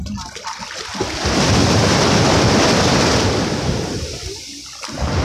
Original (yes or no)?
yes